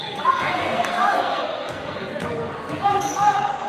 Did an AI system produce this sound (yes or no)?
yes